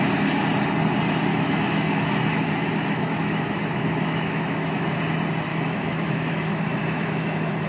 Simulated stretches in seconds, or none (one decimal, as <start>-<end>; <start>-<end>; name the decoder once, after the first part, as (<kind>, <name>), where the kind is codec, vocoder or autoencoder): 1.3-5.0 (autoencoder, DAC-VAE); 5.5-7.7